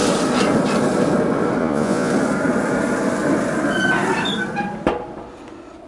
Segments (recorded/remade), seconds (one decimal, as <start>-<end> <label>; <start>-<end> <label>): 0.0-1.6 recorded; 1.6-2.1 remade; 2.1-5.9 recorded